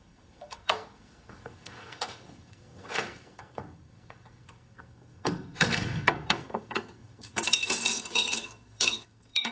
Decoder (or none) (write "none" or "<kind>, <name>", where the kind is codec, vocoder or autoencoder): codec, SNAC